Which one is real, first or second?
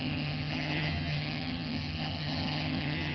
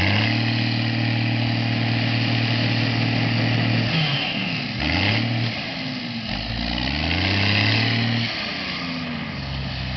second